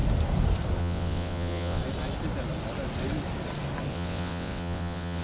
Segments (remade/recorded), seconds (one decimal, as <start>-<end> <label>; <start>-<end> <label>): 0.0-0.8 recorded; 0.8-1.8 remade; 1.8-3.9 recorded; 3.9-5.2 remade